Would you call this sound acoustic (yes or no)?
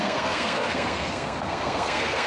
no